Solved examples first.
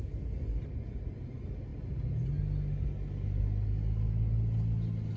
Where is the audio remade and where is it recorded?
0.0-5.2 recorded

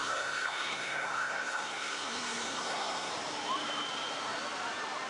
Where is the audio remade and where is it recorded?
0.0-3.1 remade; 3.1-5.1 recorded

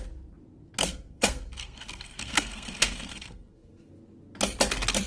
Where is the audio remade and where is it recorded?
0.0-0.8 recorded; 0.8-3.9 remade; 3.9-5.1 recorded

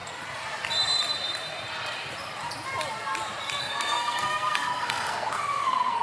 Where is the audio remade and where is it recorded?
0.0-3.6 recorded; 3.6-6.0 remade

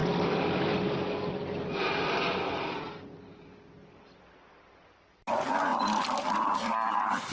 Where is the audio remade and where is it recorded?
0.0-7.3 recorded

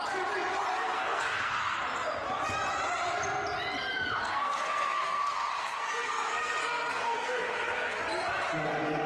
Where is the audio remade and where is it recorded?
0.0-0.7 recorded; 0.7-1.8 remade; 1.8-4.2 recorded; 4.2-8.0 remade; 8.0-9.1 recorded